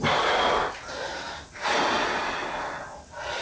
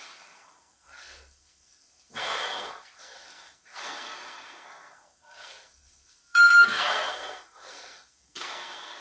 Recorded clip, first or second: first